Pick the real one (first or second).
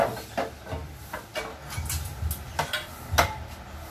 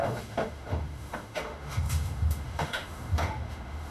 first